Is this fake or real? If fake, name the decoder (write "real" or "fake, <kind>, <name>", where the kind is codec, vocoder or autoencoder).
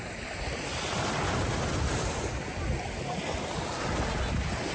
real